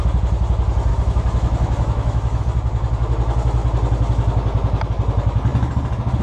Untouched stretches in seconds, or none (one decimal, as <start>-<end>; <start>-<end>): 0.0-0.9; 2.4-6.2